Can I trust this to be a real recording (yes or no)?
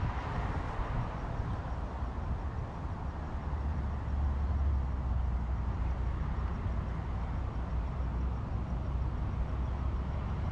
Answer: yes